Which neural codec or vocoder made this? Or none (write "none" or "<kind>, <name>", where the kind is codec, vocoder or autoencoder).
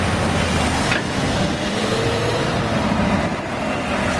none